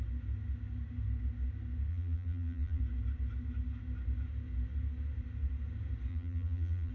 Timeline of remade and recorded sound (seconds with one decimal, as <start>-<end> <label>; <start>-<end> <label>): 0.0-1.9 recorded; 1.9-2.8 remade; 2.8-6.1 recorded; 6.1-6.9 remade